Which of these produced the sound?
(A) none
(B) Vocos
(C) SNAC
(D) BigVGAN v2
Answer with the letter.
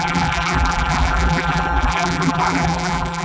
D